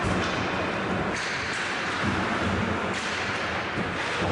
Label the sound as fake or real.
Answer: real